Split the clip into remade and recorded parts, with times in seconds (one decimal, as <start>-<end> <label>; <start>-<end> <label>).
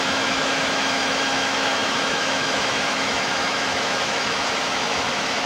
0.0-5.5 remade